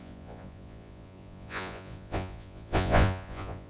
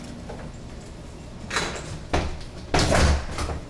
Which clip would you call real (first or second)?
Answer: second